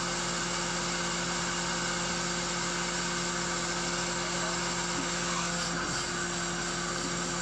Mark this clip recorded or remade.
recorded